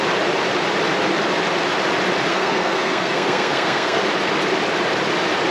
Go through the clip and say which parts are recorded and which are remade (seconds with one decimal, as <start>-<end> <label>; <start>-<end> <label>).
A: 0.0-2.3 recorded; 2.3-4.0 remade; 4.0-5.5 recorded